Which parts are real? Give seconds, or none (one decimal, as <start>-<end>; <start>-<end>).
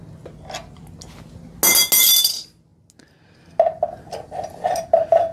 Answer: 0.0-5.3